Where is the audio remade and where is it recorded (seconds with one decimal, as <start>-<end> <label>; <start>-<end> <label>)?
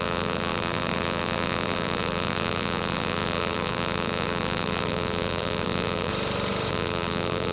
0.0-6.1 remade; 6.1-6.7 recorded; 6.7-7.5 remade